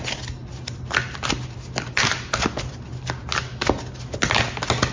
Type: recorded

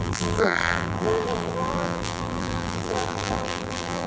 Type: remade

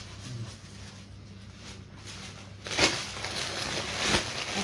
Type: recorded